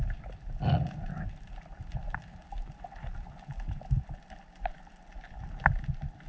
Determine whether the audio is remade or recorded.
recorded